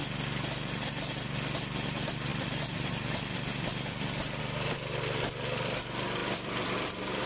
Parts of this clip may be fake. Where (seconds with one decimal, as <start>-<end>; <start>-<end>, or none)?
2.3-4.4; 6.2-7.3